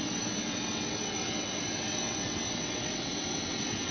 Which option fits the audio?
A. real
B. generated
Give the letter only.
B